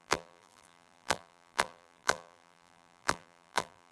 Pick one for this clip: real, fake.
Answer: fake